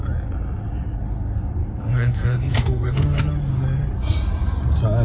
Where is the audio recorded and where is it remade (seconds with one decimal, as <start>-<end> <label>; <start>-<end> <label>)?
0.0-1.6 recorded; 1.6-3.2 remade; 3.2-5.0 recorded